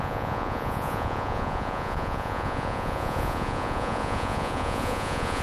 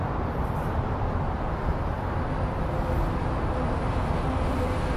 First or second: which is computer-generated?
first